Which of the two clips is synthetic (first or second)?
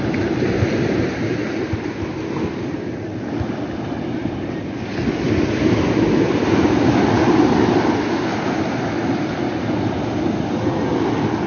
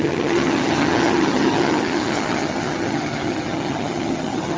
second